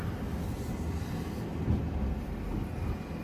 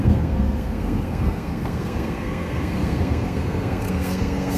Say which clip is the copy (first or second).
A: second